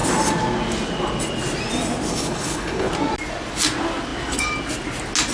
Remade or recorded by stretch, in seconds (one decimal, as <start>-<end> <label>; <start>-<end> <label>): 0.0-2.1 recorded; 2.1-2.9 remade; 2.9-5.3 recorded